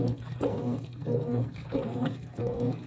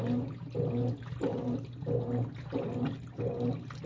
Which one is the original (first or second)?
second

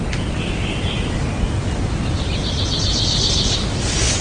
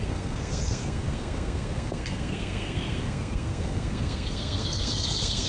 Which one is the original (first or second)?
first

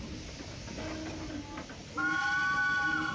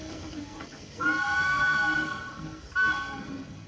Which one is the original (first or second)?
first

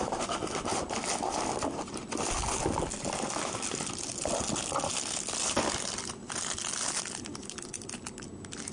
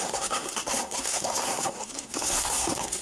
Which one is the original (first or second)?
first